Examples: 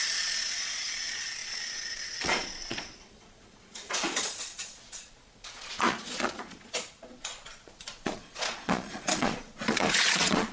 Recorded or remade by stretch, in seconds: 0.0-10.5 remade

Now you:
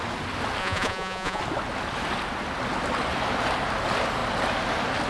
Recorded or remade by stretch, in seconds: 0.0-0.6 recorded; 0.6-1.4 remade; 1.4-5.1 recorded

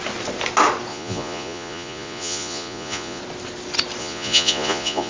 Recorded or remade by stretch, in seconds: 0.0-0.9 recorded; 0.9-3.2 remade; 3.2-4.0 recorded; 4.0-5.1 remade

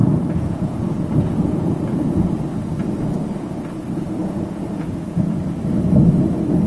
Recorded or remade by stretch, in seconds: 0.0-2.3 remade; 2.3-4.2 recorded; 4.2-5.6 remade; 5.6-6.7 recorded